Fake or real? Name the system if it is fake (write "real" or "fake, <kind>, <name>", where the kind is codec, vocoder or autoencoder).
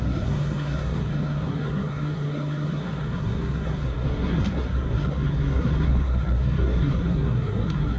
fake, codec, SNAC